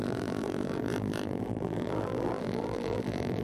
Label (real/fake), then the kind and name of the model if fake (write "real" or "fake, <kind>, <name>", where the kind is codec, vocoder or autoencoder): fake, vocoder, BigVGAN v2